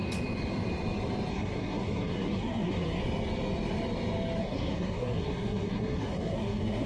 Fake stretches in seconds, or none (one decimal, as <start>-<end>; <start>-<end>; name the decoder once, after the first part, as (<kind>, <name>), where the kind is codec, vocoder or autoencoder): 1.3-3.0 (codec, SNAC); 4.4-6.9